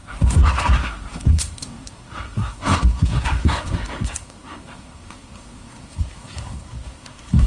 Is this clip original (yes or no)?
no